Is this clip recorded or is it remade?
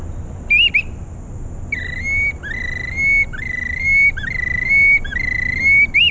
recorded